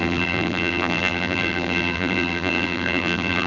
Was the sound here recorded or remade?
remade